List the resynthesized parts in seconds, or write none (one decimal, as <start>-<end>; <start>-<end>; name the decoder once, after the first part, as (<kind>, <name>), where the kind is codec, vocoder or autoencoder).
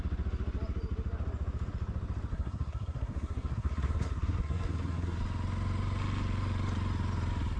2.3-5.2 (codec, SNAC)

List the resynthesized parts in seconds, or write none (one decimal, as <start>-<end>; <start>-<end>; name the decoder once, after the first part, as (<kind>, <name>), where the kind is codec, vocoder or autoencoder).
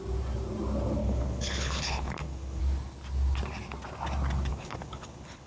1.0-2.6 (codec, HILCodec); 4.5-5.5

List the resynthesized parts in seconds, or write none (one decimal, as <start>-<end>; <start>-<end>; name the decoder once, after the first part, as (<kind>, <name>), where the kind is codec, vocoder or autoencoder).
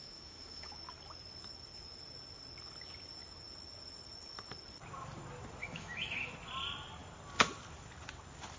0.0-0.7 (autoencoder, DAC-VAE); 5.6-6.3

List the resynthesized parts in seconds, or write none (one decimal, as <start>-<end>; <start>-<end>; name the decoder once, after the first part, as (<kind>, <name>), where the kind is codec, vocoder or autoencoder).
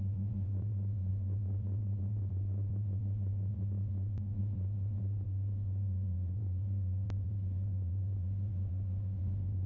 0.0-3.9 (vocoder, BigVGAN v2); 4.4-9.7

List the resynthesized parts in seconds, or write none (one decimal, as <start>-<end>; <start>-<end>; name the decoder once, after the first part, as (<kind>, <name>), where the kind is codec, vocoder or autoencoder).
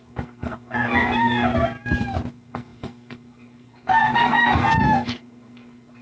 0.0-1.5 (codec, SNAC); 2.3-6.0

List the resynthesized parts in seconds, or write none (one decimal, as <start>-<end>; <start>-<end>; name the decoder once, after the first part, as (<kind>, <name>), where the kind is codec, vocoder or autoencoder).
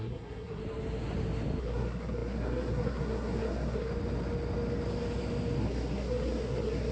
0.0-0.6 (codec, SNAC); 1.6-3.9; 5.6-6.9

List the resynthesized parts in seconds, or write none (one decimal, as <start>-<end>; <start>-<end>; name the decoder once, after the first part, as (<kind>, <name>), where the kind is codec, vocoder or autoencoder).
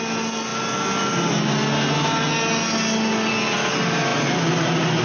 none